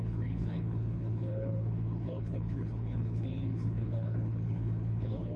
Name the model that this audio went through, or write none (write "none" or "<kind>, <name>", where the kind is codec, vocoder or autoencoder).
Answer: codec, HILCodec